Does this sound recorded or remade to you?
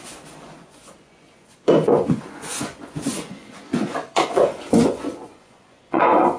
remade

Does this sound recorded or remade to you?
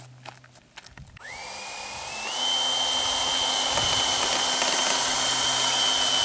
recorded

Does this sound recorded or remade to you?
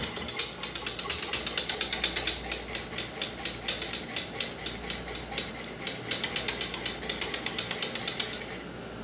recorded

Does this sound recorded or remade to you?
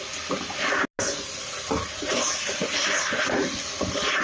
recorded